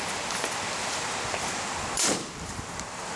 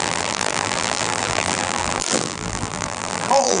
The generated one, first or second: second